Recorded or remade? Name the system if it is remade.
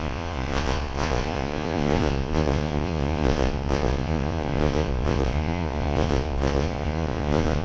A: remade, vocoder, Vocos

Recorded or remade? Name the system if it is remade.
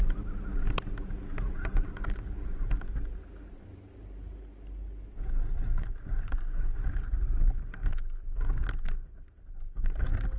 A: recorded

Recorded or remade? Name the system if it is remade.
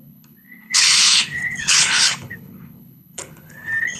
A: remade, codec, HILCodec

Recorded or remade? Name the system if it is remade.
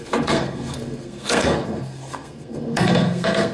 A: remade, codec, SNAC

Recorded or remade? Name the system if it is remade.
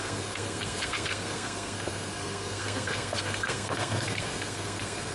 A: remade, codec, SNAC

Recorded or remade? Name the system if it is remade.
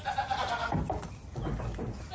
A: recorded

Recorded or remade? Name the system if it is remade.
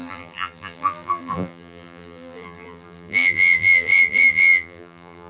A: remade, vocoder, BigVGAN v2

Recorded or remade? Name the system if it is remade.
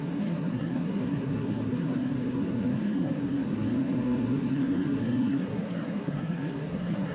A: remade, codec, SNAC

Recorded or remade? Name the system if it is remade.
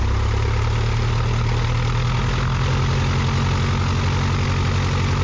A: recorded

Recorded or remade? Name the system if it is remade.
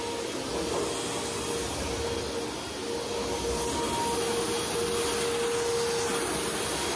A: recorded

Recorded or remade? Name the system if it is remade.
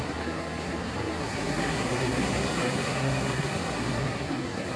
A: remade, codec, SNAC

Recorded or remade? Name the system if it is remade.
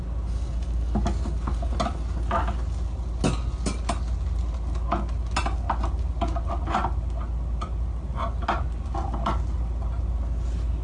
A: recorded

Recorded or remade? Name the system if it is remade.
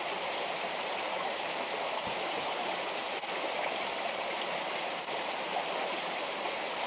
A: remade, vocoder, BigVGAN v2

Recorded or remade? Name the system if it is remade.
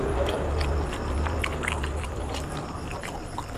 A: recorded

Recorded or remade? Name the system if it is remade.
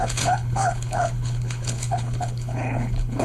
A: remade, codec, HILCodec